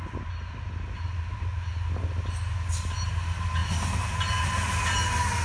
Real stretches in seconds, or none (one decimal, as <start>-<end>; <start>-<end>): 0.0-5.4